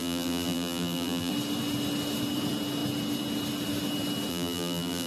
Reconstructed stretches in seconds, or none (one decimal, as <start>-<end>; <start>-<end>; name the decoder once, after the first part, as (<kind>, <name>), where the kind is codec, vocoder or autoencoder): 0.0-1.3 (vocoder, BigVGAN v2); 4.3-5.1